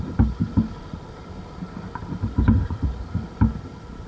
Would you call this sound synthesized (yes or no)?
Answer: no